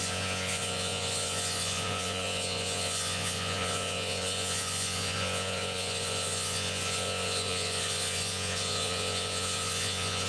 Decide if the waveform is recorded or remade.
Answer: remade